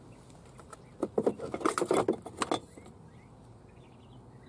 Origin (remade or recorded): recorded